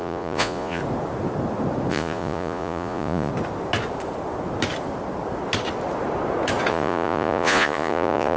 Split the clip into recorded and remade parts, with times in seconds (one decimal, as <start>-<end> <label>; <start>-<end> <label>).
0.0-0.8 remade; 0.8-1.9 recorded; 1.9-3.3 remade; 3.3-6.7 recorded; 6.7-8.4 remade